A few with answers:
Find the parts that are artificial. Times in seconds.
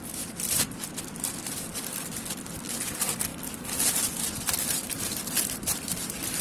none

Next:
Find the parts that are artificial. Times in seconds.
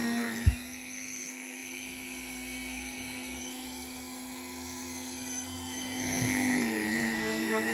0.0-7.7 (codec, SNAC)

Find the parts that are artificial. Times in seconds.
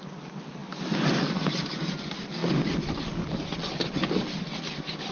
none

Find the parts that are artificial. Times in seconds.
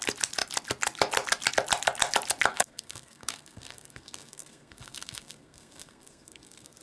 2.5-6.8 (codec, SNAC)